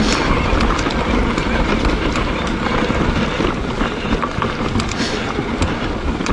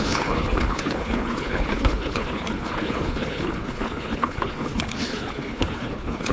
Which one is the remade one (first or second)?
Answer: second